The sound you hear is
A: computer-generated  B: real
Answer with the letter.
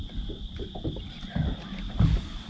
B